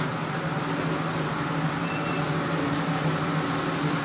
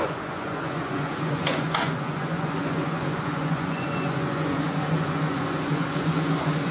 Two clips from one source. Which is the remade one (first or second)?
second